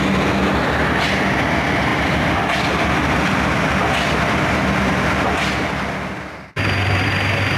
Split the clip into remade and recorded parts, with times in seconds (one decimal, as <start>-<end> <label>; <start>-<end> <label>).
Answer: 0.0-7.6 recorded